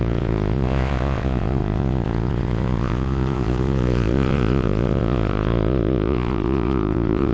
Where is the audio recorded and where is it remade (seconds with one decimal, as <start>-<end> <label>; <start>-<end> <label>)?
0.0-7.3 remade